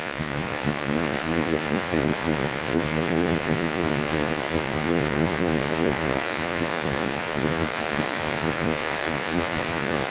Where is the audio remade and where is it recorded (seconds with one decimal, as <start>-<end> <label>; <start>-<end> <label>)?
0.0-10.1 remade